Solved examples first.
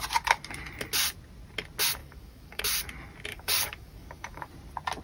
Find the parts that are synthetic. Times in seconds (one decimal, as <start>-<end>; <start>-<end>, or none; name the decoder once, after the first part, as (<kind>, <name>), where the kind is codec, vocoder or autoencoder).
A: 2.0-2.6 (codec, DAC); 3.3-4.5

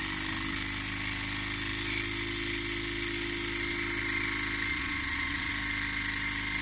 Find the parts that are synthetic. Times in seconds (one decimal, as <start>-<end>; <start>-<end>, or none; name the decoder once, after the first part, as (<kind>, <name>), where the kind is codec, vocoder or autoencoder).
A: 4.7-5.5 (vocoder, Vocos)

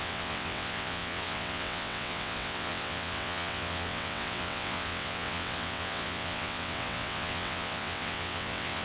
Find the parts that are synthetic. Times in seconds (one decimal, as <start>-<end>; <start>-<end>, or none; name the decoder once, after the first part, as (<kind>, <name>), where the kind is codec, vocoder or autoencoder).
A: 0.0-8.8 (vocoder, WaveNeXt)

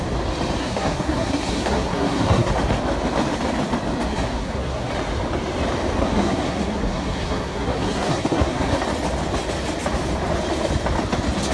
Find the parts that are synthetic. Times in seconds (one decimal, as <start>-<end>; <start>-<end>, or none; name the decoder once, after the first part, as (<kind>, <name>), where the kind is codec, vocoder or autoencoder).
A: 0.6-2.5 (codec, SNAC); 4.1-4.9; 6.0-8.7

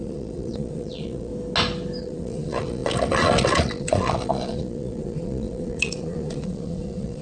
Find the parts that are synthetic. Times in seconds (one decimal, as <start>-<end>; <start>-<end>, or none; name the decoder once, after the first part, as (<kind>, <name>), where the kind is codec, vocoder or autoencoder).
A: 0.0-1.3 (vocoder, Vocos); 2.0-7.2

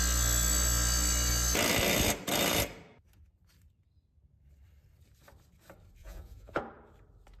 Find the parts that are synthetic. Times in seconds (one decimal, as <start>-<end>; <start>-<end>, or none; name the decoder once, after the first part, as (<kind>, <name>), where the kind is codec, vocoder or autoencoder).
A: 6.0-6.6 (vocoder, Vocos)

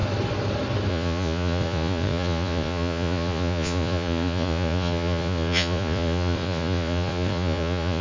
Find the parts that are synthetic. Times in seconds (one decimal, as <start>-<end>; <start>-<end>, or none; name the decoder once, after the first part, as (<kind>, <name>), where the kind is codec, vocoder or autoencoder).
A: 0.9-8.0 (vocoder, Vocos)

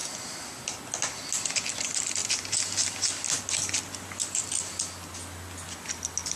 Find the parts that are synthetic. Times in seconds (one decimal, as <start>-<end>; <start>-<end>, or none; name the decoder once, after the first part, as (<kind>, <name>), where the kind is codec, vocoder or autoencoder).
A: none